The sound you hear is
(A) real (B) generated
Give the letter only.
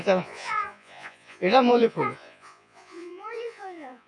B